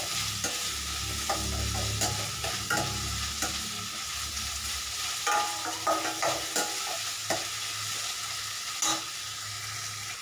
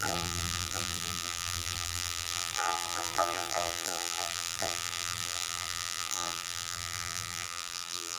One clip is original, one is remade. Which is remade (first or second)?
second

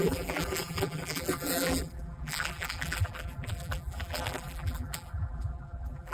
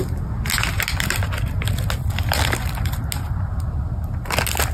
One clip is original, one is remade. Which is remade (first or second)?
first